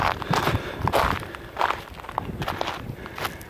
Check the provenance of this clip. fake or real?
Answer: real